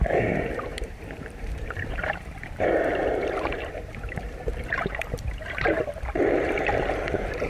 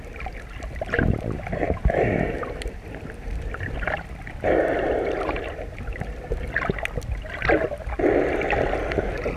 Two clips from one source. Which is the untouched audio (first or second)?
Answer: second